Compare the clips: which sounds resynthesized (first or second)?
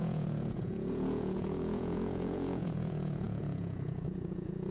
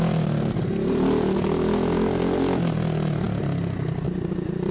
first